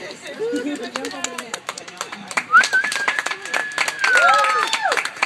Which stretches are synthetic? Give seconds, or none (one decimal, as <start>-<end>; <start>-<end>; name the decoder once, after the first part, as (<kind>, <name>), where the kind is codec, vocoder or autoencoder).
0.0-0.4 (vocoder, BigVGAN v2); 1.4-3.6; 4.3-5.3